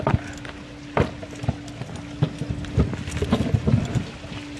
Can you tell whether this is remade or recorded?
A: recorded